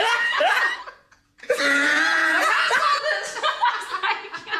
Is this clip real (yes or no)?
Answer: no